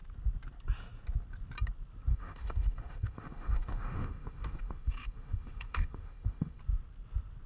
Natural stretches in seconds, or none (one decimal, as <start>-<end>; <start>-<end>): 0.0-2.1; 6.6-7.5